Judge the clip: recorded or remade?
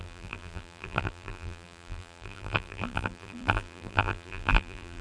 remade